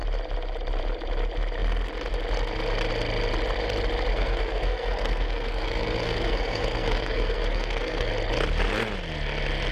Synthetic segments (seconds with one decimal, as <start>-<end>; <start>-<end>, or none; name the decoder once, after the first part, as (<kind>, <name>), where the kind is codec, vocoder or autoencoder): 4.1-8.1 (codec, SNAC)